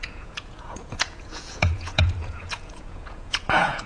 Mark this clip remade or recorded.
remade